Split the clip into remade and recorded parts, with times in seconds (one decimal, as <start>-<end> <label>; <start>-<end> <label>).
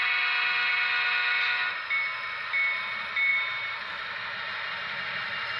0.0-3.3 recorded; 3.3-4.4 remade; 4.4-5.6 recorded